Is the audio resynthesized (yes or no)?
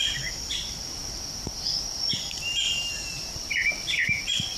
no